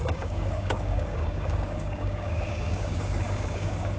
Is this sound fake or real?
fake